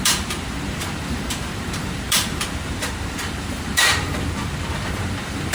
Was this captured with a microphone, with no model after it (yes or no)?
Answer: no